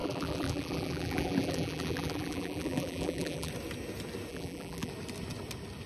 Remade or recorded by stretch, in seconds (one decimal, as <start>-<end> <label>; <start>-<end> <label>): 0.0-3.5 remade; 3.5-4.3 recorded; 4.3-4.9 remade; 4.9-5.9 recorded

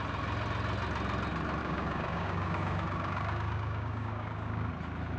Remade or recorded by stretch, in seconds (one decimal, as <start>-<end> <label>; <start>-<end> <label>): 0.0-1.6 recorded; 1.6-4.7 remade; 4.7-5.2 recorded

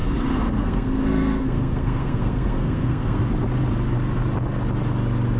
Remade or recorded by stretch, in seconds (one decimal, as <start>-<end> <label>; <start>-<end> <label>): 0.0-3.2 remade; 3.2-5.4 recorded

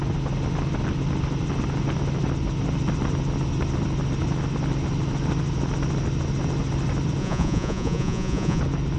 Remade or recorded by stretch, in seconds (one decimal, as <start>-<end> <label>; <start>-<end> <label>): 0.0-7.2 recorded; 7.2-8.6 remade; 8.6-9.0 recorded

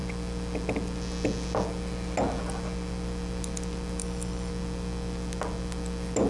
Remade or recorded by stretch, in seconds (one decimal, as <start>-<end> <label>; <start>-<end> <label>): 0.0-4.0 recorded; 4.0-4.5 remade; 4.5-6.3 recorded

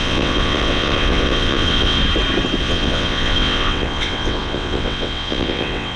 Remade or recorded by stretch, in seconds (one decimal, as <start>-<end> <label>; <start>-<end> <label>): 0.0-2.0 remade; 2.0-2.6 recorded; 2.6-6.0 remade

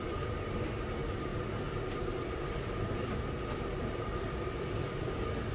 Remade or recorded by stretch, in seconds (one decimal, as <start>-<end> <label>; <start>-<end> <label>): 0.0-5.5 recorded